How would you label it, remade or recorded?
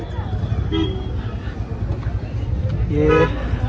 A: recorded